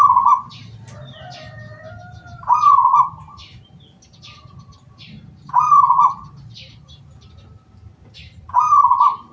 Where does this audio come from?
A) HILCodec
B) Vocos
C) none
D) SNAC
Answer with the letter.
C